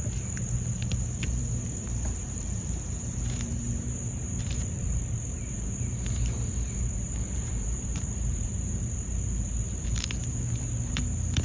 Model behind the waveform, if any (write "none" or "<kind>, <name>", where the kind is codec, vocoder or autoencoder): vocoder, BigVGAN v2